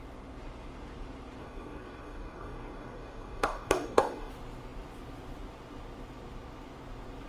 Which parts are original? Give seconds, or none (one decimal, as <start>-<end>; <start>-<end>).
0.0-1.4; 4.3-7.3